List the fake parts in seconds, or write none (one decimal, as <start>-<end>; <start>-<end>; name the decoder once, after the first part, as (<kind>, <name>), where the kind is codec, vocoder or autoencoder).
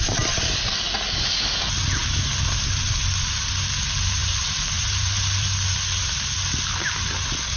4.2-5.5 (vocoder, BigVGAN v2)